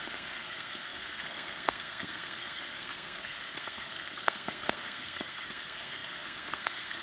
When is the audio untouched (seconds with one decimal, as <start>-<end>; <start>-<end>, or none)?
none